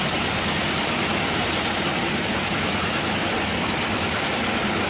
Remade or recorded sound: recorded